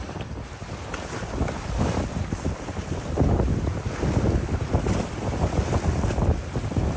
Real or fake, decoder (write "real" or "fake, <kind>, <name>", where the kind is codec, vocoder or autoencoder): real